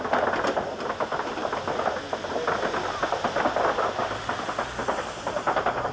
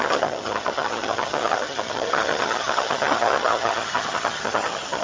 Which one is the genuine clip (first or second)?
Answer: first